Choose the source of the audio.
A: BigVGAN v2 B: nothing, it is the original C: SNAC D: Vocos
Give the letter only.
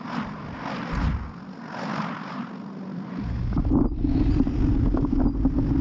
B